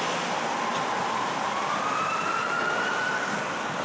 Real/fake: real